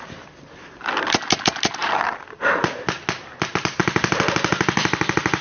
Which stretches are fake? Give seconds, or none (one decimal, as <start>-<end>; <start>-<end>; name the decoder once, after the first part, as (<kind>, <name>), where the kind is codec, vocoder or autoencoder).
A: none